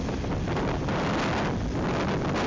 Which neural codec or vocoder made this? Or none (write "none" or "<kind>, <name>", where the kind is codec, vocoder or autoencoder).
none